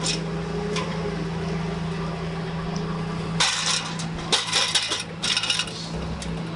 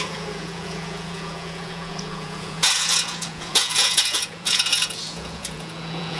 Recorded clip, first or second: first